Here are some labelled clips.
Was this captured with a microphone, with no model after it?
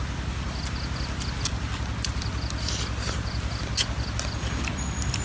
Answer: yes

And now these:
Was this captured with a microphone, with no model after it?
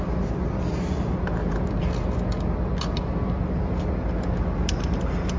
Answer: yes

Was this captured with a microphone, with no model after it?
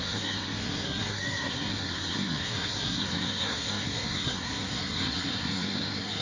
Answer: no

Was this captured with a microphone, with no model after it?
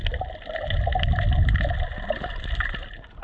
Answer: yes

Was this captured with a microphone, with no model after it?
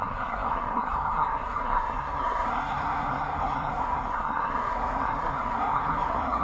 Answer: no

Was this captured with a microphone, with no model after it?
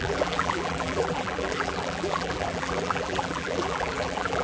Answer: no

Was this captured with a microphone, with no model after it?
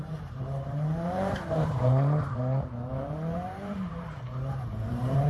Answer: no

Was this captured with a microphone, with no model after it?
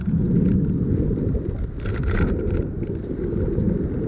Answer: yes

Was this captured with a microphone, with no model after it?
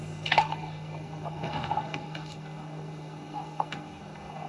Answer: no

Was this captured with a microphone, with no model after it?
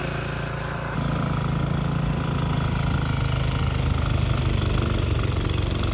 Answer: yes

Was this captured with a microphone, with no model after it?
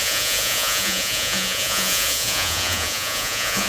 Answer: no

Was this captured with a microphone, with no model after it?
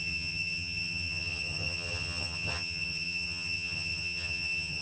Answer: no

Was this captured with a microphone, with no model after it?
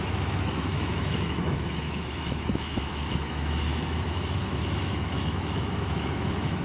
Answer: no